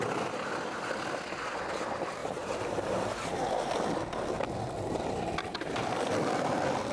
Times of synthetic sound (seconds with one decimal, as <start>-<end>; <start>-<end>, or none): 2.2-3.7; 5.5-6.1